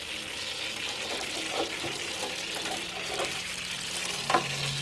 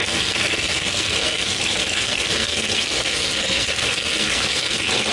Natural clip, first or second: first